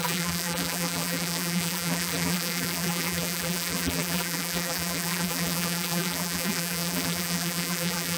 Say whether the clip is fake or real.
fake